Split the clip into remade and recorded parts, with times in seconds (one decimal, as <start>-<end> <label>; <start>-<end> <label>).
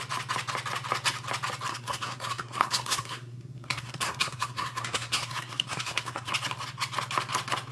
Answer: 0.0-1.7 recorded; 1.7-6.3 remade; 6.3-7.7 recorded